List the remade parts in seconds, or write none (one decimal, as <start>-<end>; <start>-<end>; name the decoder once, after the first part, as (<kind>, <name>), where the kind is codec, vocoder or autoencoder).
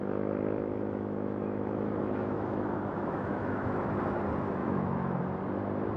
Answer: 0.7-4.0 (autoencoder, DAC-VAE); 4.6-5.2